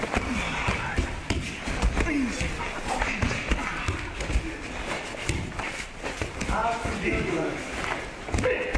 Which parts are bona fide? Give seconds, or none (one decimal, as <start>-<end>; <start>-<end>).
0.0-8.8